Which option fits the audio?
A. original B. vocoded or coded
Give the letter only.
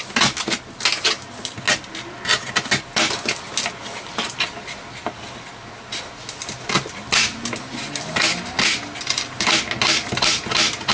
A